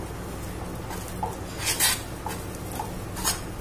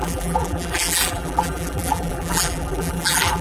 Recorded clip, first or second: first